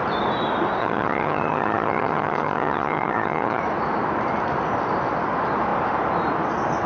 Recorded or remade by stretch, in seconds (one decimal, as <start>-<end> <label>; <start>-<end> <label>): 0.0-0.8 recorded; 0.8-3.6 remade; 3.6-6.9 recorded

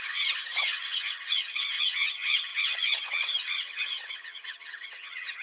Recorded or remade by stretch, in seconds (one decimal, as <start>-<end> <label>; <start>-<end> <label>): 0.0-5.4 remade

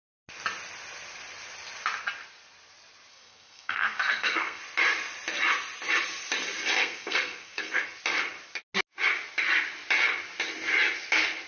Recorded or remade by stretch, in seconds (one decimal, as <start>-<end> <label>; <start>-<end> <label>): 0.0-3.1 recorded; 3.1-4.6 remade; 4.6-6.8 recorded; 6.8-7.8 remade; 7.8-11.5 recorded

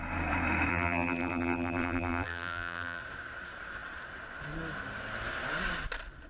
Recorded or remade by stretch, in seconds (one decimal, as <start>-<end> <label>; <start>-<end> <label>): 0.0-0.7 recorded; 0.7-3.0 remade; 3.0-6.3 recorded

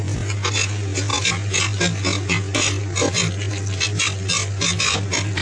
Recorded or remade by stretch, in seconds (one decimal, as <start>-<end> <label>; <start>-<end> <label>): 0.0-5.4 recorded

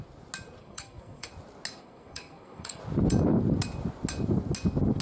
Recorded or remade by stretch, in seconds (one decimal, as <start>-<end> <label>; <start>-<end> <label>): 0.0-0.6 recorded; 0.6-1.3 remade; 1.3-1.8 recorded; 1.8-2.8 remade; 2.8-5.0 recorded